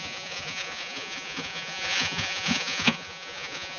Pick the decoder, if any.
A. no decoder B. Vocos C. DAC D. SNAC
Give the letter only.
B